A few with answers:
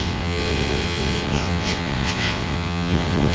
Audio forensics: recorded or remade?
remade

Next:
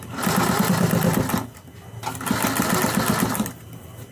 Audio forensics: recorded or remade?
recorded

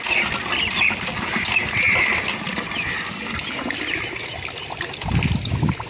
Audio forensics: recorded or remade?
recorded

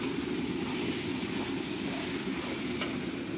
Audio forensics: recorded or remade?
recorded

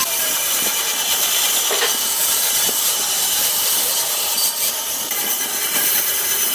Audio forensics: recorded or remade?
remade